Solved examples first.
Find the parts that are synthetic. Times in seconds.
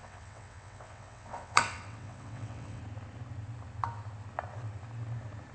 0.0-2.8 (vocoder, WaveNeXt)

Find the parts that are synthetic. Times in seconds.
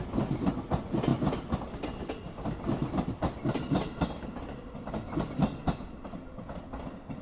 none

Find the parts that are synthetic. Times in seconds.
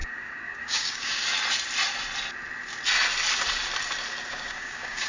0.0-1.2 (codec, DAC); 4.3-5.1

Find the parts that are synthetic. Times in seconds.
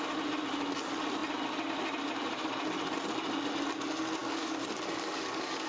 4.2-5.7 (codec, DAC)